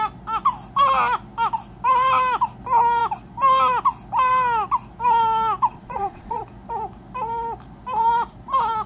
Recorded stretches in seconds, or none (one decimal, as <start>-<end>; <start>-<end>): 0.0-5.7; 6.4-8.9